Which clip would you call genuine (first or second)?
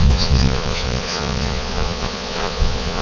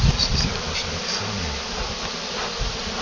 second